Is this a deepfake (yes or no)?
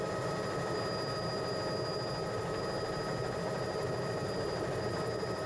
no